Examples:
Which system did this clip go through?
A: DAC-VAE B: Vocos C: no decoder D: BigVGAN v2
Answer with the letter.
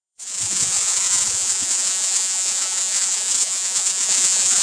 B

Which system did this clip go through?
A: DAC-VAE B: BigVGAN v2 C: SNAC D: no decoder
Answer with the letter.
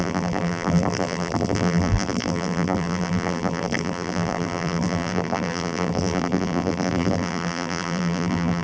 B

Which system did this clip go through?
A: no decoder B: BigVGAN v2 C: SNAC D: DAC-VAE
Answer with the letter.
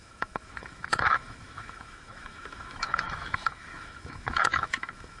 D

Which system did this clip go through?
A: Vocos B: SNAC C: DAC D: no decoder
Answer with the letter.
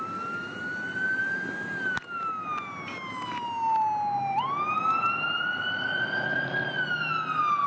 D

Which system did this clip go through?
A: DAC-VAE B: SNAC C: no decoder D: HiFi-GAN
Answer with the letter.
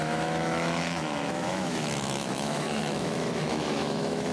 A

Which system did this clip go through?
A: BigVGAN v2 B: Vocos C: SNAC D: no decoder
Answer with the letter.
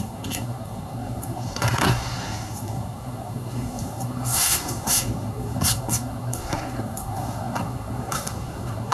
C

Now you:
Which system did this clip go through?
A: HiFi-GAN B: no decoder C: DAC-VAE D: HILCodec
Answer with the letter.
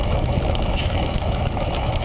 C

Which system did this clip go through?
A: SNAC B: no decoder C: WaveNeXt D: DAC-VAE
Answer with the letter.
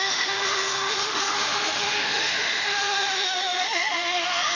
D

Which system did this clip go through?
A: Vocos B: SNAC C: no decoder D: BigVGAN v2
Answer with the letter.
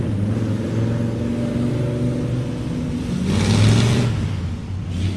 C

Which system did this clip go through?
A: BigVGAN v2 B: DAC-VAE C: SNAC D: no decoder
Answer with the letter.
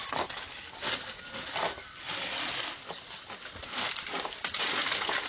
D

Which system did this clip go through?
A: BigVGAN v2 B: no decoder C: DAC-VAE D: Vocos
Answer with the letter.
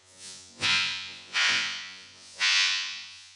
D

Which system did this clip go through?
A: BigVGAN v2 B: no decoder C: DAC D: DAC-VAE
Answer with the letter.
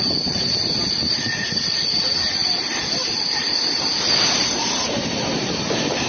A